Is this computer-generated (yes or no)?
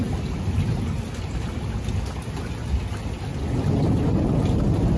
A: no